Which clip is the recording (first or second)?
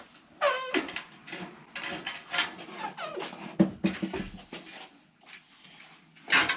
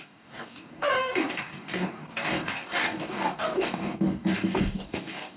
first